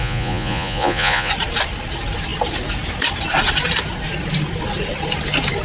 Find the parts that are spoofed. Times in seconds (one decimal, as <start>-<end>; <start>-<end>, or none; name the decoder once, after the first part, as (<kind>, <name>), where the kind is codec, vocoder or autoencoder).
0.0-1.3 (vocoder, Vocos)